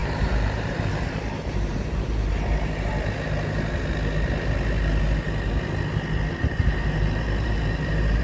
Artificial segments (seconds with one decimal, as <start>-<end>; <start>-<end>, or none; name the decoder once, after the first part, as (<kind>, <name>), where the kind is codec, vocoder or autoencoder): 0.0-2.9 (vocoder, BigVGAN v2); 6.4-8.2